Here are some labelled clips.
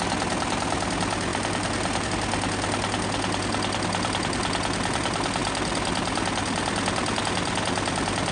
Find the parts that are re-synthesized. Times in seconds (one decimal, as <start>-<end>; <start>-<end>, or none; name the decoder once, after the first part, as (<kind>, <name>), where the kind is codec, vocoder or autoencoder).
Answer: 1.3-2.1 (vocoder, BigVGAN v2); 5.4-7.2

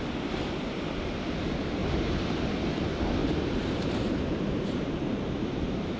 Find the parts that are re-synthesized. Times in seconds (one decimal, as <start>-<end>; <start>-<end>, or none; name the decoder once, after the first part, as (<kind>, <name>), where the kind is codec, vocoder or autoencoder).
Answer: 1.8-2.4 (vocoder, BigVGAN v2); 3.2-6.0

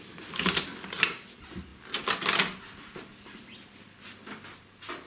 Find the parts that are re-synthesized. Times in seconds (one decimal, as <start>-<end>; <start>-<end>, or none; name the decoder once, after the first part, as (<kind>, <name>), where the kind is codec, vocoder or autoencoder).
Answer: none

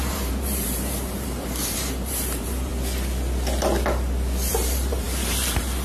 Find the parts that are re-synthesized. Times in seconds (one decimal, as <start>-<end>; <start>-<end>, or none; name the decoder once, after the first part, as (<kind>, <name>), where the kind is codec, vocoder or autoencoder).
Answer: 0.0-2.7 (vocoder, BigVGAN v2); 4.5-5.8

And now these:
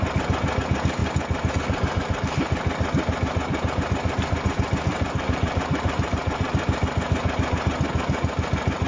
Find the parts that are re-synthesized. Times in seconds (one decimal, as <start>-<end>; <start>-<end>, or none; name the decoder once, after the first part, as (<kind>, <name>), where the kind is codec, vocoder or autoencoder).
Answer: 4.9-7.2 (vocoder, BigVGAN v2)